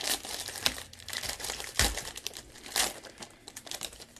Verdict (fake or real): fake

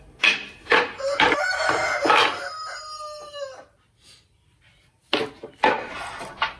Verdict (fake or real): real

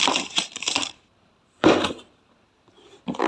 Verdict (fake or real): fake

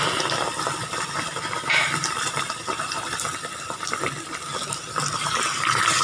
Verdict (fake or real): fake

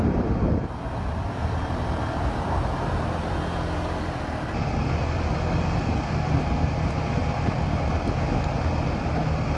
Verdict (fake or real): real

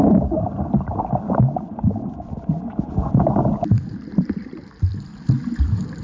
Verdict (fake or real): fake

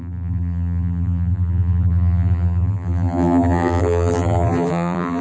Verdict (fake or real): fake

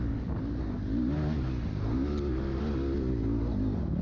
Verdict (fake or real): real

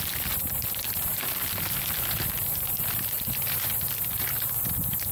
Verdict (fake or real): fake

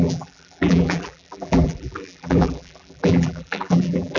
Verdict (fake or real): fake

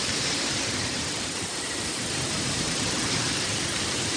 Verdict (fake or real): fake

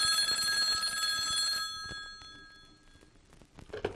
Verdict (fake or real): real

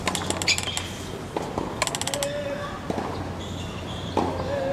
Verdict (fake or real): real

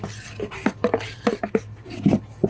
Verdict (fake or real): real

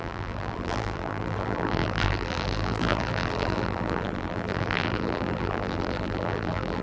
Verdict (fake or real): fake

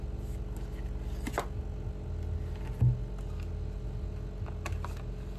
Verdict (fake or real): real